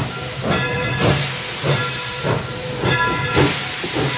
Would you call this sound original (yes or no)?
no